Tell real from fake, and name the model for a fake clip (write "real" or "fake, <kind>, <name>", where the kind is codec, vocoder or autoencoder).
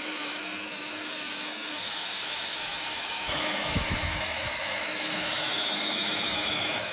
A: fake, autoencoder, DAC-VAE